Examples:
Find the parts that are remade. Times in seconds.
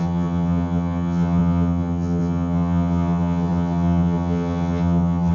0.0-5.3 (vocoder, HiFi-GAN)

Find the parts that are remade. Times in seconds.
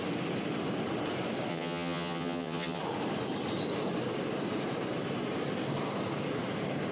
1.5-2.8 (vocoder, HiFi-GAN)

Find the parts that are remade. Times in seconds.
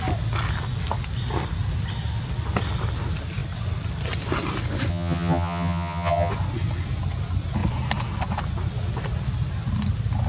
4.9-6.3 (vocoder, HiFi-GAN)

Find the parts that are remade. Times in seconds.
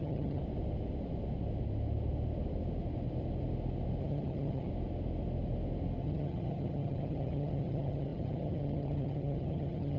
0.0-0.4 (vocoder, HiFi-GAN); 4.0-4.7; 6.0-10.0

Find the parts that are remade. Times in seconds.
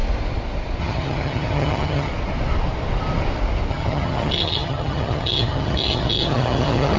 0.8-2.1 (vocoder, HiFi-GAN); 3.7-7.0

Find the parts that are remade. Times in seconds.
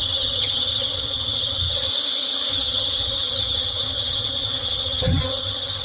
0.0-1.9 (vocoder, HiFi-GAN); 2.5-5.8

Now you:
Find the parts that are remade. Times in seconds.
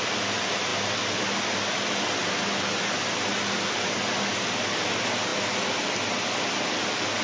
none